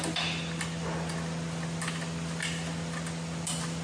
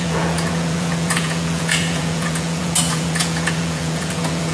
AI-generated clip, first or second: second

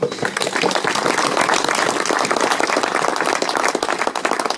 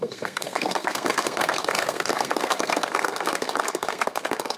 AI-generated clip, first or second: second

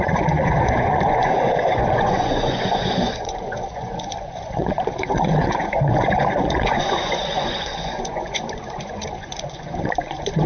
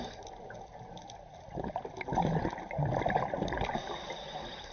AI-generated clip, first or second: first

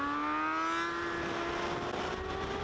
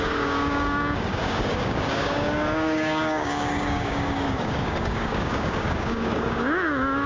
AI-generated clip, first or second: second